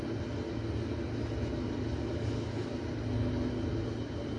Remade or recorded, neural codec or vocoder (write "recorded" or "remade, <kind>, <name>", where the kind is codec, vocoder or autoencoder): recorded